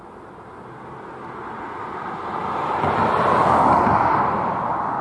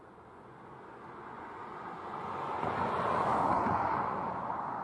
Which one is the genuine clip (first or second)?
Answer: first